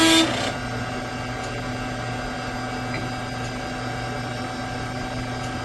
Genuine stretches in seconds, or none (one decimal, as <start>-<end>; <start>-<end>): 0.0-5.6